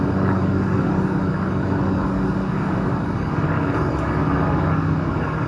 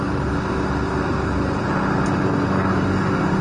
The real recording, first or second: second